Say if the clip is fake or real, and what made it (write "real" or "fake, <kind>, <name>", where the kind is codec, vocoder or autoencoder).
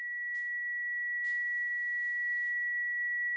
fake, codec, SNAC